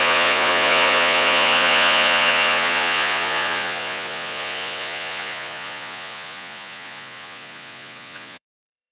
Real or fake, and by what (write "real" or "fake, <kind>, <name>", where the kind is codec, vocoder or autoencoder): fake, vocoder, Vocos